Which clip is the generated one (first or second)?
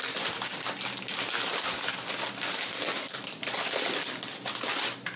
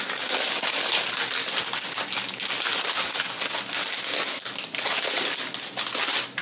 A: first